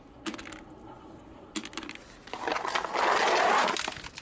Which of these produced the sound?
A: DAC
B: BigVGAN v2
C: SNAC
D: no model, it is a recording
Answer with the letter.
D